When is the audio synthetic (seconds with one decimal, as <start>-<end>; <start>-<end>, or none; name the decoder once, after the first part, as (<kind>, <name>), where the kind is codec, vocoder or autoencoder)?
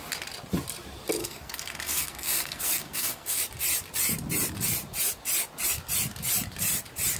1.2-3.4 (codec, SNAC)